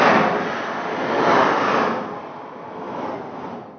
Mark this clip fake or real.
real